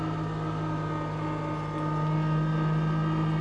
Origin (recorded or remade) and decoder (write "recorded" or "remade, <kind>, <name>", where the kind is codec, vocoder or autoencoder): recorded